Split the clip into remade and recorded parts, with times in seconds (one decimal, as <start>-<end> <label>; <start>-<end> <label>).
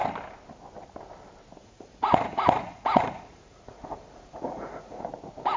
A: 0.0-1.6 recorded; 1.6-5.0 remade; 5.0-5.6 recorded